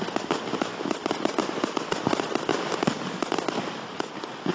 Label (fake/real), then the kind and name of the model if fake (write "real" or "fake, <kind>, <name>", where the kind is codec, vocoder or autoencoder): real